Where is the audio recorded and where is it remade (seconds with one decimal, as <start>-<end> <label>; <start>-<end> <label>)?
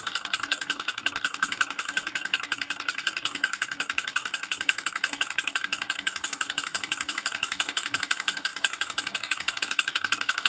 0.0-10.5 remade